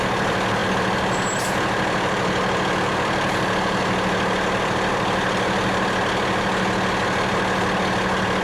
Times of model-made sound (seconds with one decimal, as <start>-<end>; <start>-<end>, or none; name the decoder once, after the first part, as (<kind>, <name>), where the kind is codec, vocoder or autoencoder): none

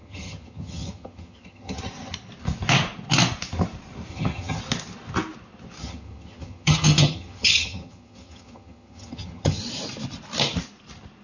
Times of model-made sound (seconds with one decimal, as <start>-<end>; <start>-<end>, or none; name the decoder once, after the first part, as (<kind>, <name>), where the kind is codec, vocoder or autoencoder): 0.0-1.8 (vocoder, HiFi-GAN); 4.1-4.6; 5.8-9.6

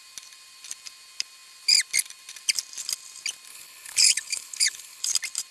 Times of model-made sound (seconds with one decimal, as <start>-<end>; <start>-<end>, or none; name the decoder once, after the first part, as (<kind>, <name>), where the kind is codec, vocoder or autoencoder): 3.5-5.0 (codec, HILCodec)

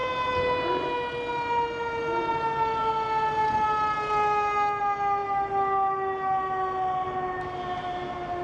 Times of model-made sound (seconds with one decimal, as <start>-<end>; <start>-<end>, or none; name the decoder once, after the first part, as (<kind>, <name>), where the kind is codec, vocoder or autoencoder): none

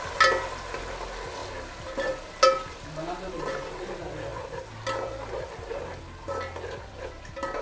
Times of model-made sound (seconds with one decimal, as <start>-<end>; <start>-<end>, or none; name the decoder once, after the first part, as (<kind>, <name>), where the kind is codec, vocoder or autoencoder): none